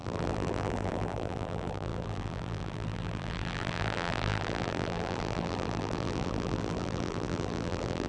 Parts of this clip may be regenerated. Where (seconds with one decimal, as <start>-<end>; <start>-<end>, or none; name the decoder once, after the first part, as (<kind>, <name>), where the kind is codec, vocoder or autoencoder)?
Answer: 0.0-8.1 (vocoder, BigVGAN v2)